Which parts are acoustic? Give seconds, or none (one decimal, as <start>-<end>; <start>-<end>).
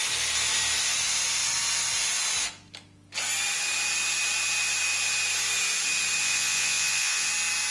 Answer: 0.0-6.2; 7.3-7.7